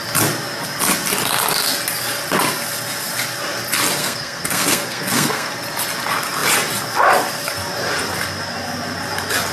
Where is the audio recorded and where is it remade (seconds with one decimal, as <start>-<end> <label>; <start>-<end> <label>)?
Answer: 0.0-4.0 recorded; 4.0-5.5 remade; 5.5-9.5 recorded